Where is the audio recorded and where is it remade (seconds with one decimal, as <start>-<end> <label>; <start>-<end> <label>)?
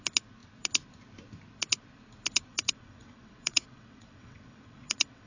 0.0-2.5 recorded; 2.5-5.3 remade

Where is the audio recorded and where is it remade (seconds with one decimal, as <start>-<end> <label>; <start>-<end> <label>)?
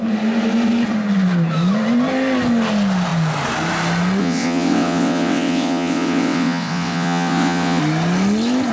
0.0-4.2 recorded; 4.2-7.8 remade; 7.8-8.7 recorded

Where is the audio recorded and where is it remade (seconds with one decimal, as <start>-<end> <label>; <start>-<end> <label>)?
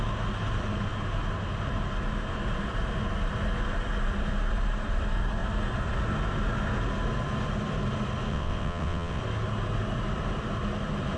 0.0-8.3 recorded; 8.3-9.2 remade; 9.2-11.2 recorded